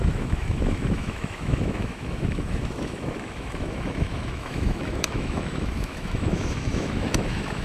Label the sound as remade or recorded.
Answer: remade